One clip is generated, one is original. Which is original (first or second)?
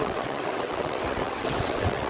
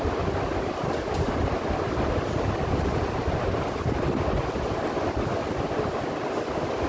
second